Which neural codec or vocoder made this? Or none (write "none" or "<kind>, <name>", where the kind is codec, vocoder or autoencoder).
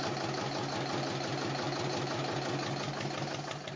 none